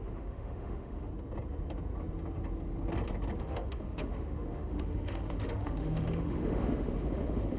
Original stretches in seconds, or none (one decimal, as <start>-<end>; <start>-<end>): 1.1-3.4

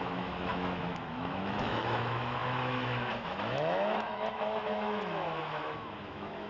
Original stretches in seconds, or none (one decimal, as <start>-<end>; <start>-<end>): none

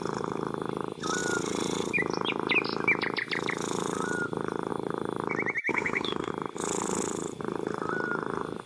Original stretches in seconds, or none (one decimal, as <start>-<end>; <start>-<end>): 0.0-5.7; 6.3-8.7

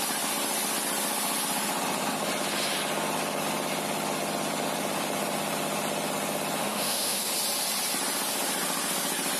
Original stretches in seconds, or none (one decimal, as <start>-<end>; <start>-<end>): 0.0-6.6; 7.3-9.4

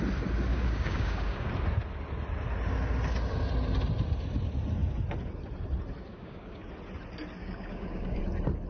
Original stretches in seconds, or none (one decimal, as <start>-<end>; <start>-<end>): 0.0-0.5; 1.5-6.1; 6.7-7.4; 8.2-8.7

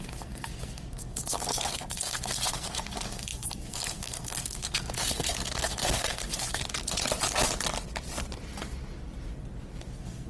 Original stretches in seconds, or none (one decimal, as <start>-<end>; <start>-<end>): 6.6-9.9